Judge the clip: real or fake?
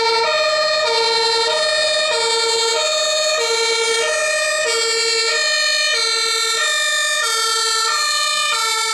real